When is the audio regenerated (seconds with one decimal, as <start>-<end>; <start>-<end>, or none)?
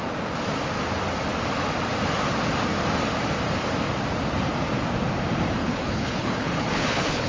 5.6-7.3